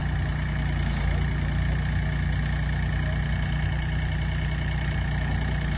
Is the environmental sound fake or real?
real